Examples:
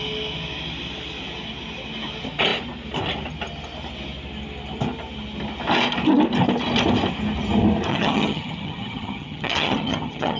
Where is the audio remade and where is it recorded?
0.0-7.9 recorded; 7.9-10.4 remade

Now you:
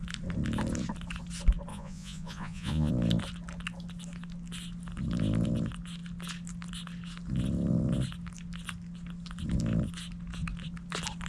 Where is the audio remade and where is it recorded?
0.0-1.7 recorded; 1.7-2.9 remade; 2.9-11.3 recorded

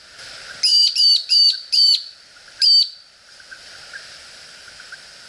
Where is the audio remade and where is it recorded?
0.0-0.8 recorded; 0.8-3.8 remade; 3.8-5.3 recorded

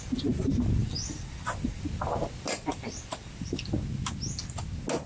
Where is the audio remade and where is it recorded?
0.0-0.8 recorded; 0.8-1.8 remade; 1.8-2.7 recorded; 2.7-3.8 remade; 3.8-5.1 recorded

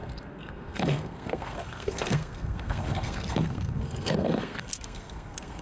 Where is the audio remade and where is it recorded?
0.0-5.6 remade

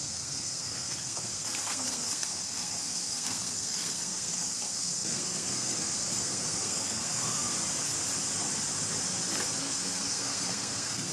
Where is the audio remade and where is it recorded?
0.0-7.5 remade; 7.5-9.6 recorded; 9.6-11.1 remade